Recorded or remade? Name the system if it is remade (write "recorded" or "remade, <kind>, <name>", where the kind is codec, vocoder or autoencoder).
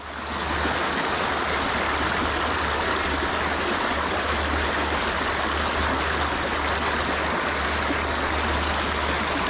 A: recorded